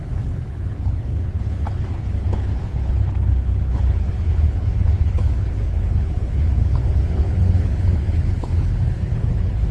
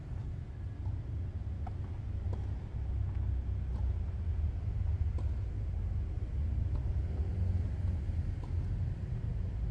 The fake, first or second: first